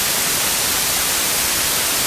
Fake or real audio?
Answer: real